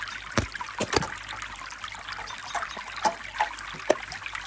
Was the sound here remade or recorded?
recorded